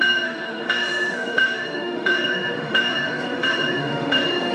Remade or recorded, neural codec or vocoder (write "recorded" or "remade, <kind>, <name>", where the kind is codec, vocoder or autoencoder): remade, autoencoder, DAC-VAE